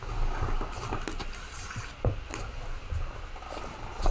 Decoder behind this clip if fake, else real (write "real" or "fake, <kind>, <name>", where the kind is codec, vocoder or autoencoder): real